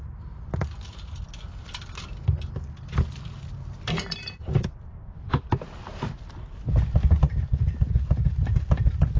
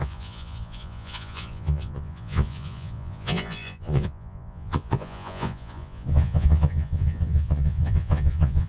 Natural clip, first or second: first